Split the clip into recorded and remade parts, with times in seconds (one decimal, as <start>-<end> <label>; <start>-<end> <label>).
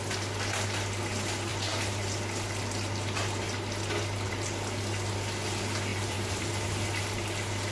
0.0-5.9 recorded; 5.9-6.5 remade; 6.5-7.7 recorded